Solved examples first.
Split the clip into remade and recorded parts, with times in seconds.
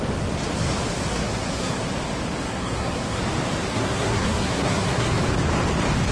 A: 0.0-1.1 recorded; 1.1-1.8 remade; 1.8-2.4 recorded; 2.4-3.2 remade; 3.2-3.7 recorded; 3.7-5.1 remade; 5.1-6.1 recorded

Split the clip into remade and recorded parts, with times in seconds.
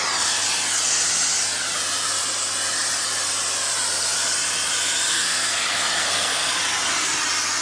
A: 0.0-5.1 recorded; 5.1-6.5 remade; 6.5-7.6 recorded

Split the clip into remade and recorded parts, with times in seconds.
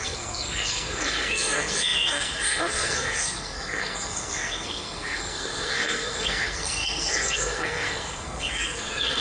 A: 0.0-9.2 remade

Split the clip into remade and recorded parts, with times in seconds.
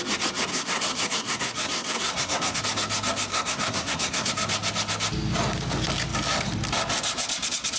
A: 0.0-0.5 recorded; 0.5-2.6 remade; 2.6-3.3 recorded; 3.3-4.3 remade; 4.3-7.8 recorded